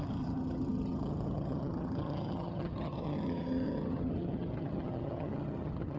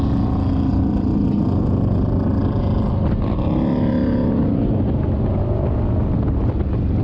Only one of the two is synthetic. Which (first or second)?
first